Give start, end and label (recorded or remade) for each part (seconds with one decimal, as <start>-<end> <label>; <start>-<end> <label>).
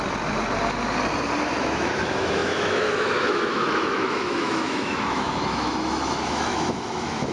0.0-1.6 recorded; 1.6-7.3 remade